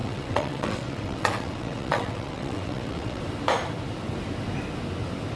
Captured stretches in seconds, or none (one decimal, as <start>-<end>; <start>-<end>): 3.2-5.4